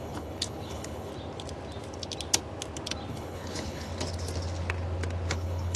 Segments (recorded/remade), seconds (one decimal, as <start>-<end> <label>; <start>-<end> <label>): 0.0-1.1 remade; 1.1-3.1 recorded; 3.1-3.9 remade; 3.9-5.3 recorded; 5.3-5.8 remade